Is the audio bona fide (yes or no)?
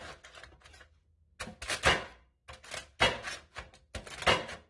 yes